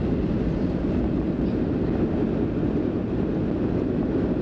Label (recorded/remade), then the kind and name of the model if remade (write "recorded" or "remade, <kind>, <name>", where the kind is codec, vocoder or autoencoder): recorded